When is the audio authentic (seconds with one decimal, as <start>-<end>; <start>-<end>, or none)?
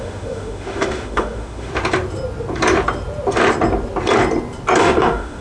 1.7-4.8